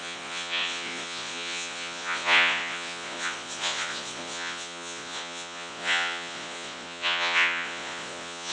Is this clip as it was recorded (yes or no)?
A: no